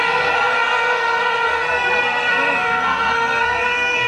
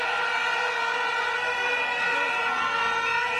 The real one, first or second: second